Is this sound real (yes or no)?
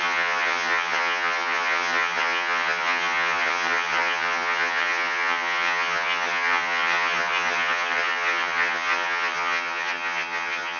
no